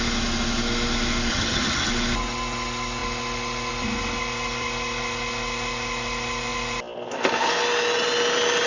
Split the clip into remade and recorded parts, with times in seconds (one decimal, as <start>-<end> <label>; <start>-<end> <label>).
0.0-1.3 recorded; 1.3-1.9 remade; 1.9-8.7 recorded